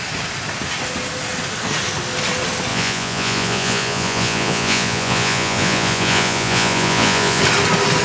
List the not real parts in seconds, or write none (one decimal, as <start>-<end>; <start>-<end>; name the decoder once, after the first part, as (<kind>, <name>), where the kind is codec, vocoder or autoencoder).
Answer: 2.7-7.4 (vocoder, Vocos)